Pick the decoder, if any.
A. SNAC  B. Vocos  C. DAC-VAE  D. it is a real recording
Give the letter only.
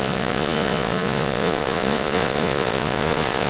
B